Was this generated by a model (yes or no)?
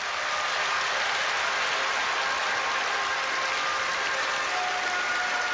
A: no